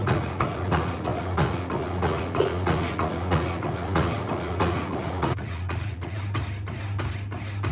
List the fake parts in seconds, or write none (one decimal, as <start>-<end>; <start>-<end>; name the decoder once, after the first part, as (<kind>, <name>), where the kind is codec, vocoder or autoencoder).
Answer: 0.0-6.2 (vocoder, Vocos)